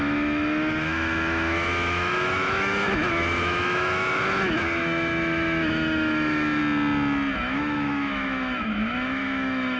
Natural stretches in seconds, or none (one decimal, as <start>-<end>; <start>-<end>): 6.6-7.4